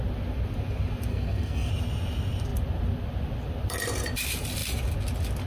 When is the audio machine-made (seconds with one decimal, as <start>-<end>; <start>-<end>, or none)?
1.1-1.7